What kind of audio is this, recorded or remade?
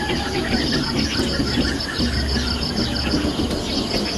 recorded